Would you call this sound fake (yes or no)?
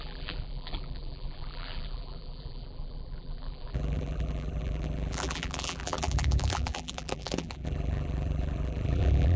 yes